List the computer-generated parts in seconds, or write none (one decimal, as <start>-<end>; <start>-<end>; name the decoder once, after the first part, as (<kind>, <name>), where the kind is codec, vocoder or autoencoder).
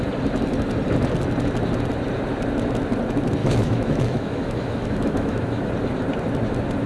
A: 3.4-5.7 (autoencoder, DAC-VAE)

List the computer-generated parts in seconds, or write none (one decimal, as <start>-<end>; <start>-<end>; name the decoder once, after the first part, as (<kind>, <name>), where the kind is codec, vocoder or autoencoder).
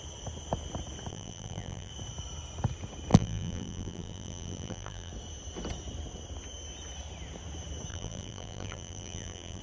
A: 1.1-1.9 (vocoder, BigVGAN v2); 3.1-5.1; 7.9-9.6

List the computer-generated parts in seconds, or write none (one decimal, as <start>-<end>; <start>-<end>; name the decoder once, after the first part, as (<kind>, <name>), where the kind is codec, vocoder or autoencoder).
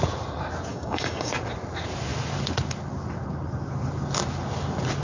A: 0.7-1.3 (codec, DAC)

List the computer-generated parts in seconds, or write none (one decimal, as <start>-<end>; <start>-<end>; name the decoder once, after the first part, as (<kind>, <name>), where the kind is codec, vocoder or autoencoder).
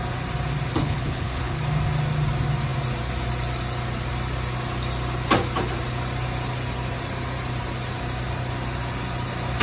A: 0.8-1.6 (codec, HILCodec)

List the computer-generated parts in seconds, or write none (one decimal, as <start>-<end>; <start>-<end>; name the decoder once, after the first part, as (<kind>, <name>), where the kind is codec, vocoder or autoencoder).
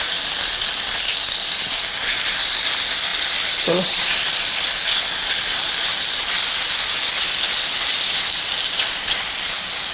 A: none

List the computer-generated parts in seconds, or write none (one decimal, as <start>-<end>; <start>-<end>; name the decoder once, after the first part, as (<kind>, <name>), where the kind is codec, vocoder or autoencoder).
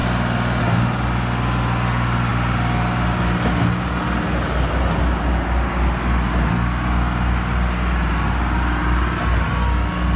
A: none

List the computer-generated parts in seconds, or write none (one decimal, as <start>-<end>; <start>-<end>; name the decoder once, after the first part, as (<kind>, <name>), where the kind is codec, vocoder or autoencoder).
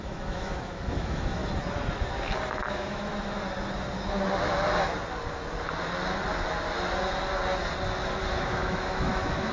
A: 0.0-1.4 (autoencoder, DAC-VAE); 2.5-3.1; 8.3-9.5